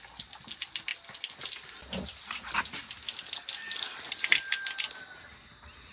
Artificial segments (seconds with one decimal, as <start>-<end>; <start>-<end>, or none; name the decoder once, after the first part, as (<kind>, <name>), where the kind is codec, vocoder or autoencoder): none

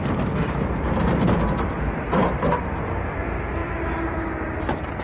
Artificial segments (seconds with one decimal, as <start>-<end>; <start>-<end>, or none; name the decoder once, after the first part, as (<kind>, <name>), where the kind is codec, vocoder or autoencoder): 3.6-5.0 (vocoder, BigVGAN v2)

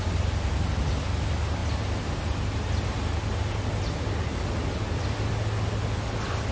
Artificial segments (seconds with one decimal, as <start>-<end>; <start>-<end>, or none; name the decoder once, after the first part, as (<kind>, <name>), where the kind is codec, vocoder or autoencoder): none

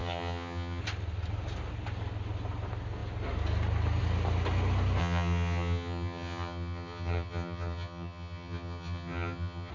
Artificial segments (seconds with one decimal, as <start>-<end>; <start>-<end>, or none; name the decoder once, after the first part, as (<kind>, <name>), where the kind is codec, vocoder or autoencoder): 0.0-0.8 (vocoder, HiFi-GAN); 5.0-9.7